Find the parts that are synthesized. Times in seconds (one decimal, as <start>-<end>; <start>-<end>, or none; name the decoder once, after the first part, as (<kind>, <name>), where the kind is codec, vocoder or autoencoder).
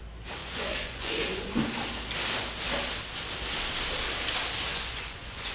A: 0.4-1.6 (vocoder, Vocos); 4.7-5.5